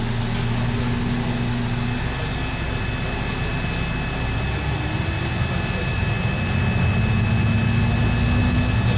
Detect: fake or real real